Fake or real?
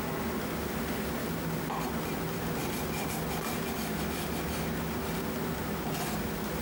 real